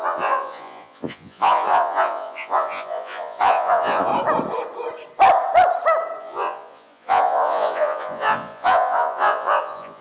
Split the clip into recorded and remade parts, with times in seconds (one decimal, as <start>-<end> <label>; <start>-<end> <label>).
0.0-4.1 remade; 4.1-6.2 recorded; 6.2-10.0 remade